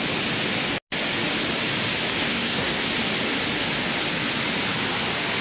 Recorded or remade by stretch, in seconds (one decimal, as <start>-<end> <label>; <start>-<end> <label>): 0.0-2.2 recorded; 2.2-2.8 remade; 2.8-5.4 recorded

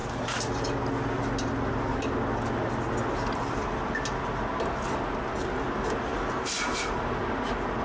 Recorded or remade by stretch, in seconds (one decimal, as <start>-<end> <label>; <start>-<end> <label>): 0.0-7.8 recorded

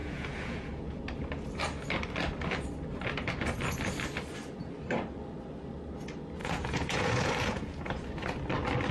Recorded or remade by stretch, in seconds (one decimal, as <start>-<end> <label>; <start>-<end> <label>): 0.0-1.0 remade; 1.0-6.4 recorded; 6.4-8.1 remade; 8.1-8.9 recorded

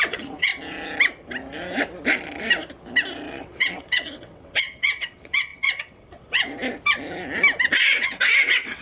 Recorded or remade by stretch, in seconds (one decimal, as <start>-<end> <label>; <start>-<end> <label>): 0.0-0.5 remade; 0.5-3.3 recorded; 3.3-6.6 remade; 6.6-7.8 recorded; 7.8-8.8 remade

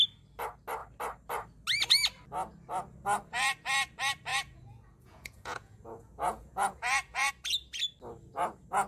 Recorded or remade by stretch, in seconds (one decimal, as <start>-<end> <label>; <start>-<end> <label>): 0.0-4.3 recorded; 4.3-7.3 remade; 7.3-8.9 recorded

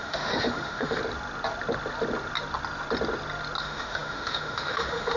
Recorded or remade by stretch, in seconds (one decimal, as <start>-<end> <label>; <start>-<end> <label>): 0.0-1.0 remade; 1.0-3.6 recorded; 3.6-5.2 remade

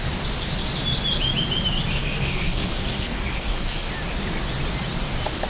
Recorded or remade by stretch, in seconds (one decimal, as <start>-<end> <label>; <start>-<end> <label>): 0.0-1.9 recorded; 1.9-3.9 remade; 3.9-5.5 recorded